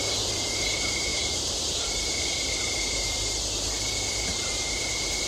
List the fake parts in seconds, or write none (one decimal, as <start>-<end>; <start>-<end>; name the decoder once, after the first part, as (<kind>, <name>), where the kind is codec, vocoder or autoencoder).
1.1-3.3 (vocoder, BigVGAN v2); 4.3-5.3